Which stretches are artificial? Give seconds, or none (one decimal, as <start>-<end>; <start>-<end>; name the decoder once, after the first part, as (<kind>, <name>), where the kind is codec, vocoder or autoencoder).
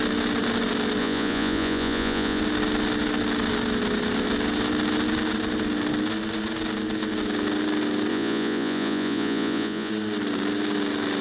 1.0-2.4 (vocoder, Vocos); 8.1-9.9